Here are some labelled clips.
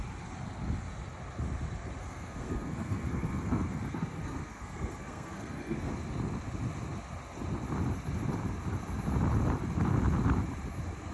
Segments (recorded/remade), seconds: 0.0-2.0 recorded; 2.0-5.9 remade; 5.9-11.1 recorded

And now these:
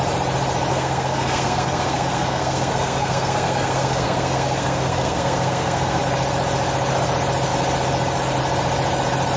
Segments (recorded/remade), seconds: 0.0-0.7 recorded; 0.7-6.0 remade; 6.0-9.4 recorded

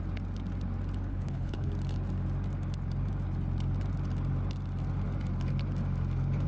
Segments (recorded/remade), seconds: 0.0-1.1 recorded; 1.1-1.7 remade; 1.7-6.5 recorded

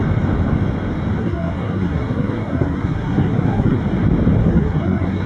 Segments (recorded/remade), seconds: 0.0-1.2 recorded; 1.2-3.8 remade; 3.8-4.4 recorded; 4.4-5.3 remade